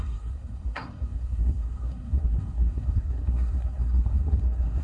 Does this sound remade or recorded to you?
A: remade